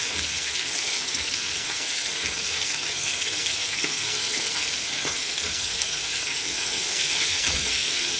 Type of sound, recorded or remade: remade